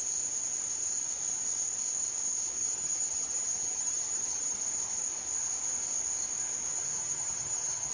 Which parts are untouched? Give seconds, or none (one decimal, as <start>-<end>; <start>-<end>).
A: 0.0-2.6; 4.6-7.0